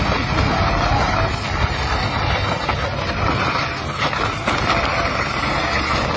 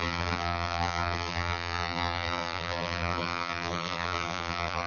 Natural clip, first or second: first